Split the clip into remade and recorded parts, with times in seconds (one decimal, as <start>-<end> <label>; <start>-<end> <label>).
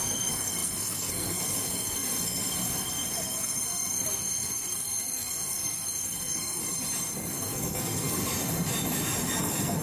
0.0-6.6 remade; 6.6-7.3 recorded; 7.3-8.2 remade; 8.2-9.4 recorded; 9.4-9.8 remade